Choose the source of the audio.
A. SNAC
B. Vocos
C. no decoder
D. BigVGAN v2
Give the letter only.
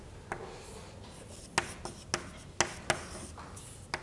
C